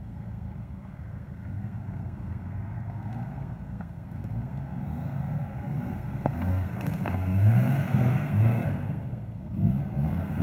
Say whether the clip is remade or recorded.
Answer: remade